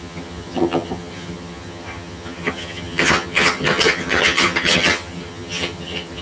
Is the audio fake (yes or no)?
yes